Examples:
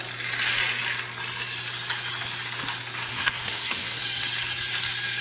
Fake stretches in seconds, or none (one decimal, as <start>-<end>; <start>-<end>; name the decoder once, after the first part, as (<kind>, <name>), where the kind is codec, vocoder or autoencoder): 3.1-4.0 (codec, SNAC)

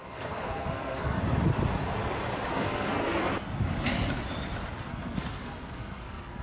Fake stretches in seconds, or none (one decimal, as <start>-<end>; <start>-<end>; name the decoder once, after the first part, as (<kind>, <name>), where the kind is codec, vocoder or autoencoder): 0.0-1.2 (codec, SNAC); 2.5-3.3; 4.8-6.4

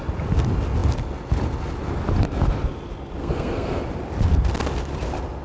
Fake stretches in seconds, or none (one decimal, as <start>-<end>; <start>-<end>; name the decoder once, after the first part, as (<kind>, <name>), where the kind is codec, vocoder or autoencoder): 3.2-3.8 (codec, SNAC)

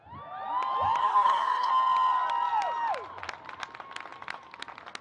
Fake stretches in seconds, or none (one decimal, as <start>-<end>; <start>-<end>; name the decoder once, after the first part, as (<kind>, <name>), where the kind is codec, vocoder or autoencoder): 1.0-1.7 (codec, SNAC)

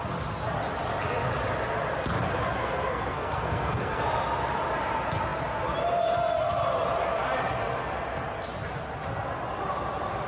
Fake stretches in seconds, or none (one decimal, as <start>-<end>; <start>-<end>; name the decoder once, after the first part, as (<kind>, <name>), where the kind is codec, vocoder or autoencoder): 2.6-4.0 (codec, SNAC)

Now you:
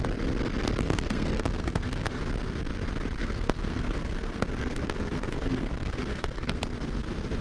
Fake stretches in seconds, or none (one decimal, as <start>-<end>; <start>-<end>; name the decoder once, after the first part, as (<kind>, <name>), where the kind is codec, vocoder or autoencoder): 0.8-2.2 (codec, SNAC); 3.2-6.6

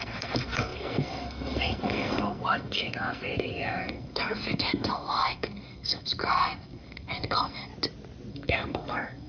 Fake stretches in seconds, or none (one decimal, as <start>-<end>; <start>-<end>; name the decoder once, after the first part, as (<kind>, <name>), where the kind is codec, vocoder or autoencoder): 0.0-7.7 (codec, SNAC); 8.3-9.3

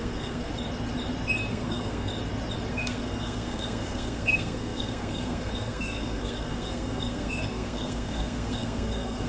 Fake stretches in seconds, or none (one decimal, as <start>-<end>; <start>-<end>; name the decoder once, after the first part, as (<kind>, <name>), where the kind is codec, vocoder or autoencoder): 0.0-0.5 (codec, SNAC); 1.5-2.1; 2.7-9.3